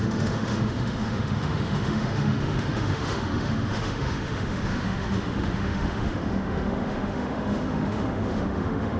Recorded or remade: remade